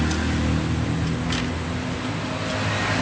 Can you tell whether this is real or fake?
real